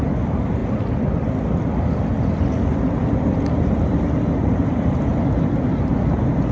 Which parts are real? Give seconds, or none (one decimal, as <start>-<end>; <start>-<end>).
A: 0.0-0.6; 1.4-2.1; 6.0-6.5